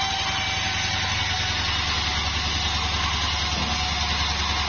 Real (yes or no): yes